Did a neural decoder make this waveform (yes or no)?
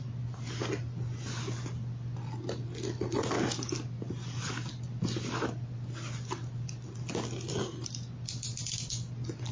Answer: no